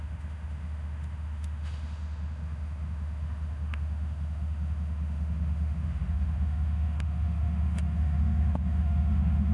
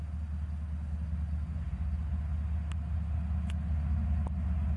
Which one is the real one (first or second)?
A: second